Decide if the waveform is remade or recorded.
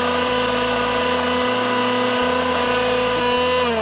recorded